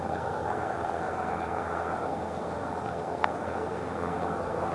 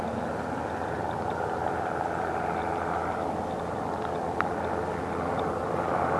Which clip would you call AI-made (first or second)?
first